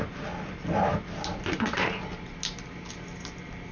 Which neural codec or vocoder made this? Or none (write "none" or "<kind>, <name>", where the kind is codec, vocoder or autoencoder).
none